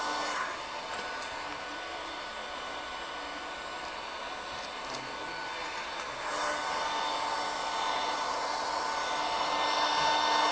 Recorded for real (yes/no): yes